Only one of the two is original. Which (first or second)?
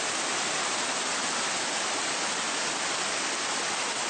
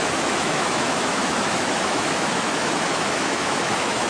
first